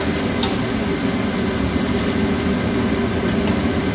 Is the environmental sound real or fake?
real